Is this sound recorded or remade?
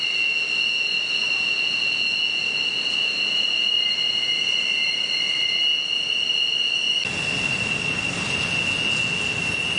recorded